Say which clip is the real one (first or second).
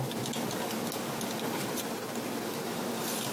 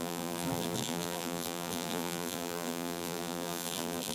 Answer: first